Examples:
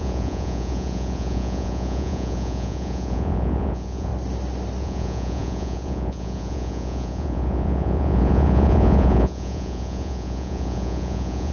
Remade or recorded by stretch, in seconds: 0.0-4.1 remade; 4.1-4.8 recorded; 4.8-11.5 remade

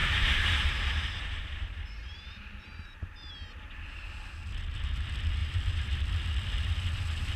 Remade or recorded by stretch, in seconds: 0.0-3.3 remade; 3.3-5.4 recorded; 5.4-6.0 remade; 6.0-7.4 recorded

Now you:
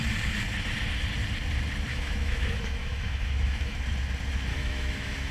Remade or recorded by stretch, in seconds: 0.0-1.9 recorded; 1.9-3.8 remade; 3.8-4.5 recorded; 4.5-5.3 remade

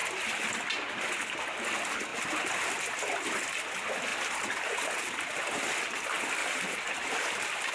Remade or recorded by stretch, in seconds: 0.0-6.4 recorded; 6.4-7.7 remade